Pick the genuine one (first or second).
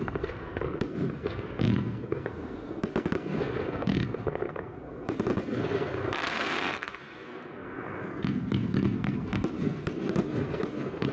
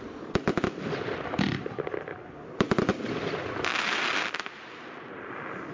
second